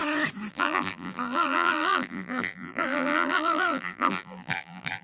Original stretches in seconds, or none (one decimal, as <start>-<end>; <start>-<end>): 0.0-0.5